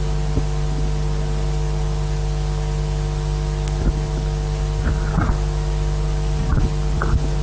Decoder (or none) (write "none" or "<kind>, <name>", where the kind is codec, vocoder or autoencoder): none